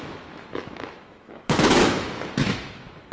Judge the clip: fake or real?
fake